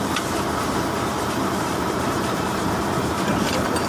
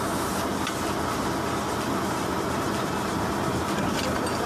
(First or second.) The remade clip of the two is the first